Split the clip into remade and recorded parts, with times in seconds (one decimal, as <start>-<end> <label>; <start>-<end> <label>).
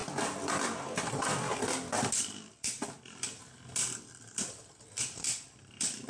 0.0-6.1 recorded